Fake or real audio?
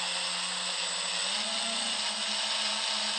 real